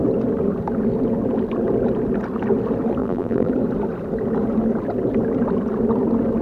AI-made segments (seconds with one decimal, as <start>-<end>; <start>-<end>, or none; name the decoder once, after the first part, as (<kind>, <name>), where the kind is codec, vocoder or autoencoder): 3.0-3.5 (vocoder, BigVGAN v2)